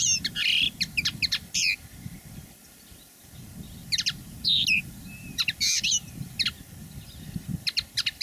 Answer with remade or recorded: remade